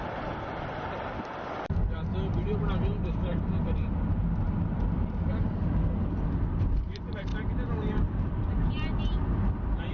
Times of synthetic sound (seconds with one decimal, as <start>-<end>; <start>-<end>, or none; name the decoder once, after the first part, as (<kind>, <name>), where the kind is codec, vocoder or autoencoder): 7.3-8.7 (vocoder, BigVGAN v2)